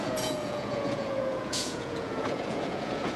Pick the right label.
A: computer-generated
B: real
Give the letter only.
A